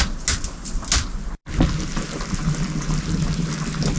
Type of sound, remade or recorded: recorded